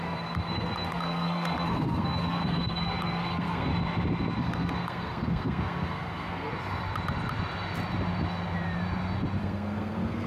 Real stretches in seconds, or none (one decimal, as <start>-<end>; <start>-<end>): 3.7-4.4; 6.5-9.4